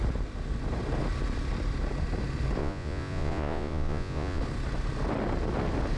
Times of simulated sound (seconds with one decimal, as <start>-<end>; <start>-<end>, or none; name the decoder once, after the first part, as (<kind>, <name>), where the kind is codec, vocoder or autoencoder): 2.6-4.4 (vocoder, Vocos)